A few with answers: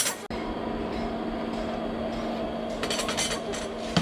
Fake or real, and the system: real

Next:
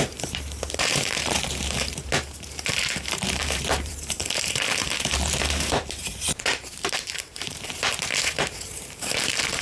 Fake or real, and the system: fake, vocoder, BigVGAN v2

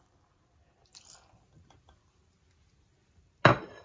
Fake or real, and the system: real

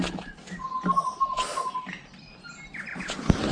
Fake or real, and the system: real